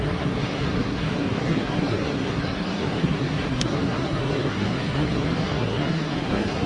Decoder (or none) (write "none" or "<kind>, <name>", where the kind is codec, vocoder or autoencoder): codec, SNAC